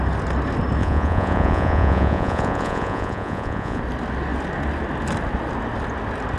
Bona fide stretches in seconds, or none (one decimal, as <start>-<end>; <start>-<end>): 0.0-0.8; 3.8-6.4